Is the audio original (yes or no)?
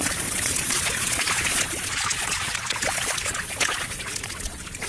no